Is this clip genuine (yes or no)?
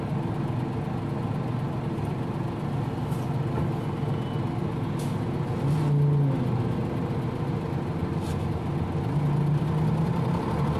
yes